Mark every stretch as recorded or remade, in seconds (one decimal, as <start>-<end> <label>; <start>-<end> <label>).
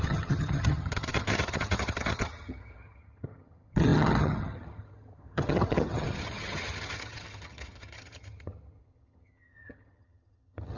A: 0.0-10.8 remade